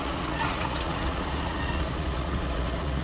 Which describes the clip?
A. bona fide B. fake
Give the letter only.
B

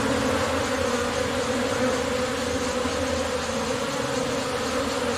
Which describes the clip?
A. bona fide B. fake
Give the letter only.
A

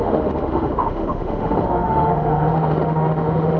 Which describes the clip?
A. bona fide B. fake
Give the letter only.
B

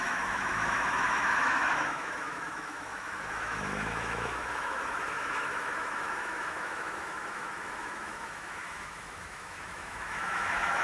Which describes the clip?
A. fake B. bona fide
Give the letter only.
A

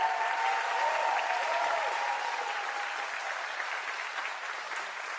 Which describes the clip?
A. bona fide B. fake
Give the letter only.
B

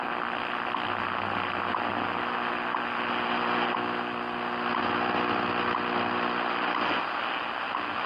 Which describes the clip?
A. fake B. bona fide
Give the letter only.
B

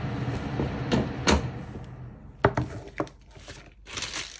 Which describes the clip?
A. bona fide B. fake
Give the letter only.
A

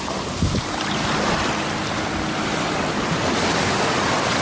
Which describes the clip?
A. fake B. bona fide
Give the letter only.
B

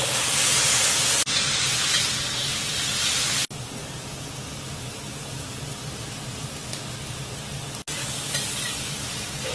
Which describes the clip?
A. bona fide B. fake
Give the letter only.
A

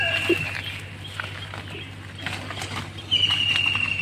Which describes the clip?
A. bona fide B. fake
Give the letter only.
A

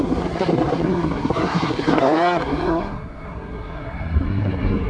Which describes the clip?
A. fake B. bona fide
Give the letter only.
A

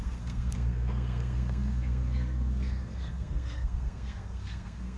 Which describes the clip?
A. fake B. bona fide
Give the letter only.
A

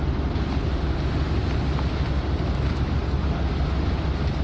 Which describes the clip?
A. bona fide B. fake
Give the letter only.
A